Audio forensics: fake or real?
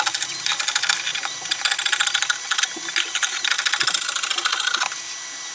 real